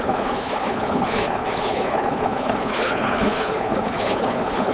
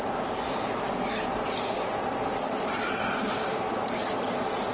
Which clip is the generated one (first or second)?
first